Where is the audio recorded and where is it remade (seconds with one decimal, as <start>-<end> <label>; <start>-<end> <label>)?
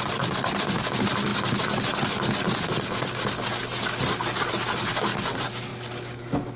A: 0.0-6.6 recorded